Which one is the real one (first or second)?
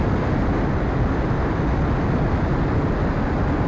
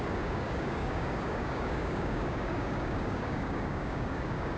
first